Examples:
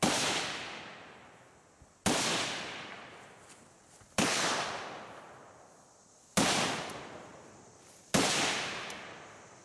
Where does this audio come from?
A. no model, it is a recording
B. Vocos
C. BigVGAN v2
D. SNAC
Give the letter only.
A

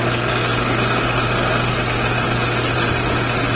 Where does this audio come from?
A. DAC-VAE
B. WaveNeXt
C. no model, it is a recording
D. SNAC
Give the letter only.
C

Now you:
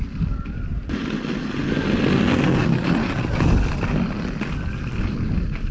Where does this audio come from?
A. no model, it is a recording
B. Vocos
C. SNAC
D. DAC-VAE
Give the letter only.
A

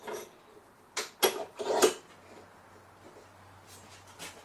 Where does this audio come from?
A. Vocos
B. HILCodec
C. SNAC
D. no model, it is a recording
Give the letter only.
D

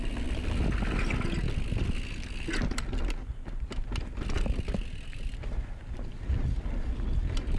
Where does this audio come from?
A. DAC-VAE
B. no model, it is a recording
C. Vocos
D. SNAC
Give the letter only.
B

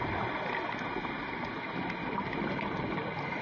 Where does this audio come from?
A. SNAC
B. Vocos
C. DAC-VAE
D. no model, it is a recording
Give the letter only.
D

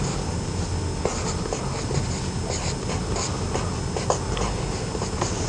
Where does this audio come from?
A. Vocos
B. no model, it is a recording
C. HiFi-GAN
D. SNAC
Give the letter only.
B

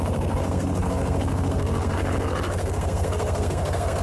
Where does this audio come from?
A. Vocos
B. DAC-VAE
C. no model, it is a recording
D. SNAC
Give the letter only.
D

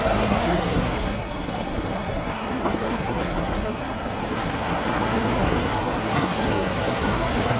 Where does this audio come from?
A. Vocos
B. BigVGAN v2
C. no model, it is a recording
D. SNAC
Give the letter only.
D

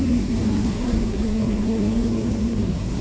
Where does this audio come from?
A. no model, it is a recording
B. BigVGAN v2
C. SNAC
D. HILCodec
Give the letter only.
C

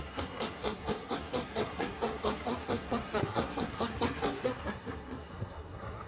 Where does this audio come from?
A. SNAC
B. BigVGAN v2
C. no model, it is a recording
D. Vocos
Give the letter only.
A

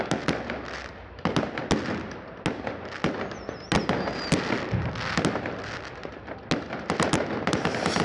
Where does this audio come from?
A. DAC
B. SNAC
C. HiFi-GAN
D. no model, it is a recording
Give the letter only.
D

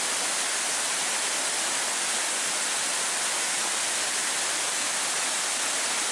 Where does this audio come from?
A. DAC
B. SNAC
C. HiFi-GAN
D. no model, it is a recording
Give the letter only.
D